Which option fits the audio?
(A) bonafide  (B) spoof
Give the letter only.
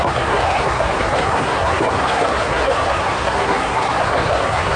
B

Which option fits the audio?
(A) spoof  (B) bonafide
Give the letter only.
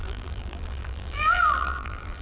A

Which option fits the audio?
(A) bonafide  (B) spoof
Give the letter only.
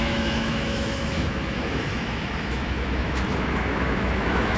B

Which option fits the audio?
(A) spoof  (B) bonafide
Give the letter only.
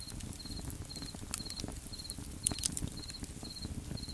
B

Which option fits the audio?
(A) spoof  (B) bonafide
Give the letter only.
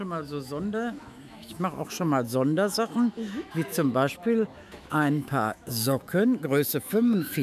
A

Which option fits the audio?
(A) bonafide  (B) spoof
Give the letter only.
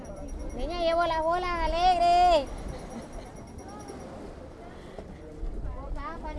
A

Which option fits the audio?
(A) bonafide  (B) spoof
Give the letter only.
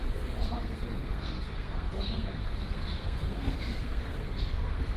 B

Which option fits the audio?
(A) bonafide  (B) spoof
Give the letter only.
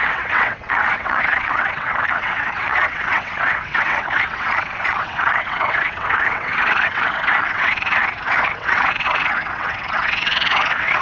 B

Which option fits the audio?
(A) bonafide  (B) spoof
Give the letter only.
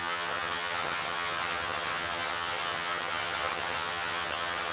B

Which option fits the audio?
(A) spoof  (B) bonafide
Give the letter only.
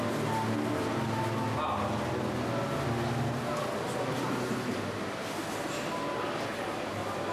B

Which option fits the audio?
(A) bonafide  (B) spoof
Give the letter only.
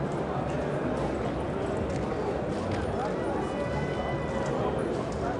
A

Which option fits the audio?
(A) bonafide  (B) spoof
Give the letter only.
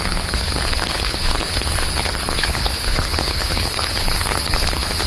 B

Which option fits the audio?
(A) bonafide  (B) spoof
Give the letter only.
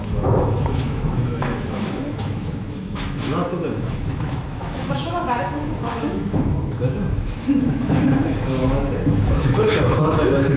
B